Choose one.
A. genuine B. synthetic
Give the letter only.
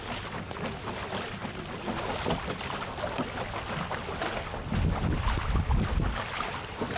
A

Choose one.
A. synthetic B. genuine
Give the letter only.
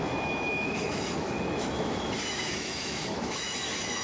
A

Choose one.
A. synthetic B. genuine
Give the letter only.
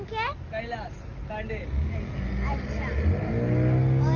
B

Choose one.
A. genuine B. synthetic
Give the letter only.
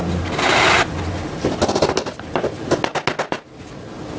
A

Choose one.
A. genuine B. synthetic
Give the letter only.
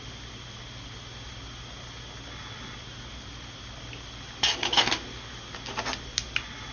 A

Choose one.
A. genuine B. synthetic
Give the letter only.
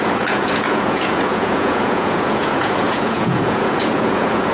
B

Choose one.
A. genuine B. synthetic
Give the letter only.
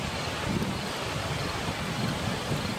A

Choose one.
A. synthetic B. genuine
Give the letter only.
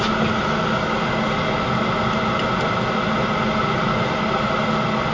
B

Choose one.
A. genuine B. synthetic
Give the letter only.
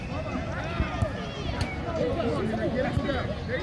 A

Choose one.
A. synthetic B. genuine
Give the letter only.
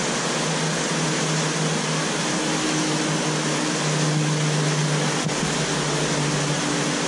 B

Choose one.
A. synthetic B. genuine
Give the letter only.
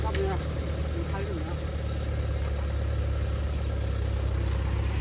B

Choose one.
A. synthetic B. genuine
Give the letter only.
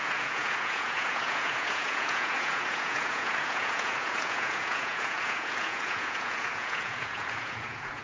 A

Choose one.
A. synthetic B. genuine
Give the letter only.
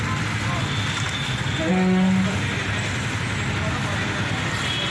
B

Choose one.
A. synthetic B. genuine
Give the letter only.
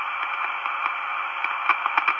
B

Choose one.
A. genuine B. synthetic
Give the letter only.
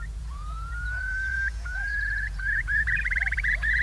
B